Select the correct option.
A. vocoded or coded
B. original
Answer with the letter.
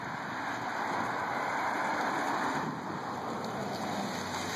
B